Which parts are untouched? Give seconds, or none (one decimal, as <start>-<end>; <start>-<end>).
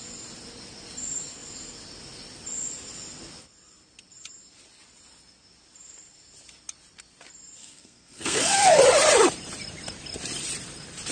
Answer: 0.0-7.6; 8.8-11.1